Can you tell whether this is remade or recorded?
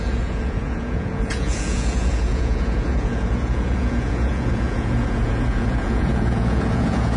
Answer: remade